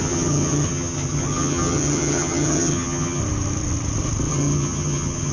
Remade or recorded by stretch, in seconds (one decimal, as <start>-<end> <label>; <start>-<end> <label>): 0.0-3.2 remade; 3.2-4.3 recorded; 4.3-5.3 remade